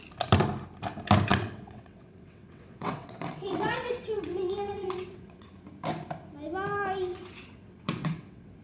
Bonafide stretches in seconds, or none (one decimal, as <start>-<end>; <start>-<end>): 0.0-1.3; 5.5-7.1